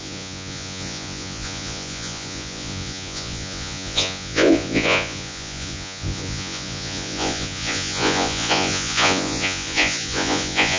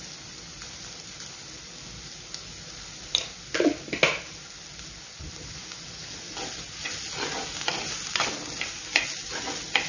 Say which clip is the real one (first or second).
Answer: second